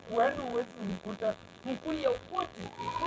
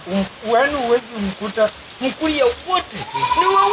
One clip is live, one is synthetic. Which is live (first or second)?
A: second